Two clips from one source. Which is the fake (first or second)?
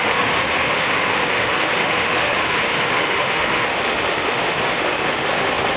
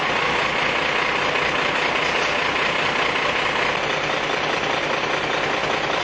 first